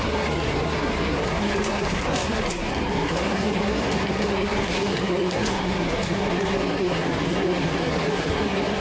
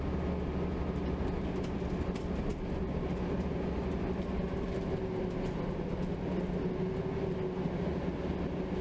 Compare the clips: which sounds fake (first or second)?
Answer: first